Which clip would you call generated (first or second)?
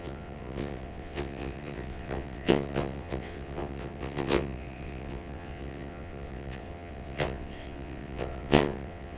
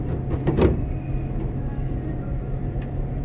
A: first